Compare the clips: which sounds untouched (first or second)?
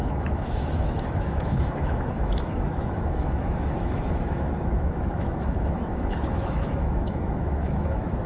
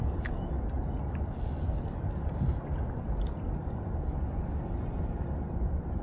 second